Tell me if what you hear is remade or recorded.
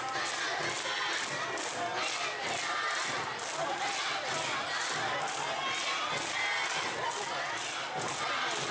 recorded